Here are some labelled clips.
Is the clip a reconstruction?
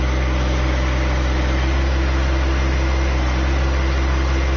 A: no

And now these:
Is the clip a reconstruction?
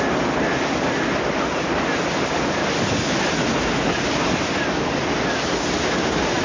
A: no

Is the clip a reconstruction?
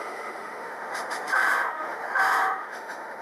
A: yes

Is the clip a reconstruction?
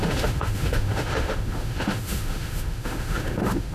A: yes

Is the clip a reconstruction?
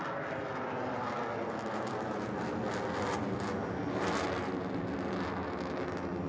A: no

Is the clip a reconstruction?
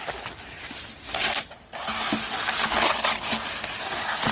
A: no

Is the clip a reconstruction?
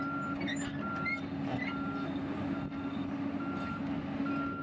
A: no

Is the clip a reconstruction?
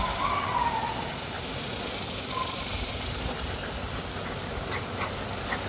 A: no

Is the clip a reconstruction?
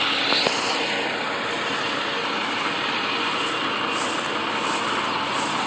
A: no